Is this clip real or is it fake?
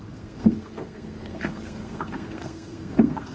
fake